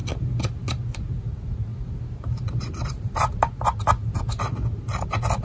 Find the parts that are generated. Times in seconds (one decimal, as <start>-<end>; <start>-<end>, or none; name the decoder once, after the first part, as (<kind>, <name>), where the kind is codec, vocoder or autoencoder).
1.7-3.5 (vocoder, BigVGAN v2)